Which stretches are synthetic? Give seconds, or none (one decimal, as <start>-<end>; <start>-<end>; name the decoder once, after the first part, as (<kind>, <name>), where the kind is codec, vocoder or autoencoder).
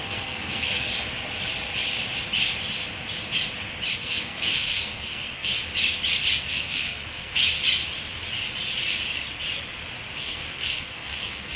0.0-0.9 (codec, SNAC); 3.9-5.5; 6.4-7.4; 10.2-11.6